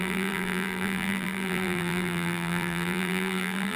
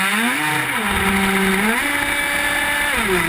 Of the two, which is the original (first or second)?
second